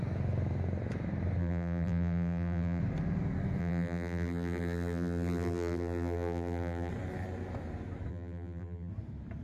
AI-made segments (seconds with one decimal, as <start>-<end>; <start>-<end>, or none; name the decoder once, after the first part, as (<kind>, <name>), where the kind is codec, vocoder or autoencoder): 1.4-2.8 (vocoder, BigVGAN v2); 3.6-6.9; 8.1-8.9